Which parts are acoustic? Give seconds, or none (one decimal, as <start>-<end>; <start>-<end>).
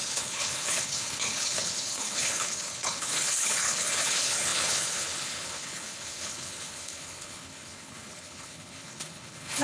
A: none